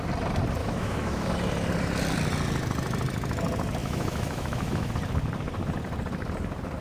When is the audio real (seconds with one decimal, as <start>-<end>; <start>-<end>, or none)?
0.0-0.6; 1.3-3.8; 4.9-6.8